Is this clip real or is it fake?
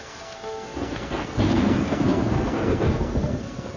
fake